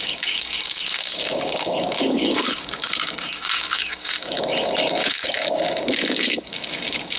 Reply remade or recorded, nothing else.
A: remade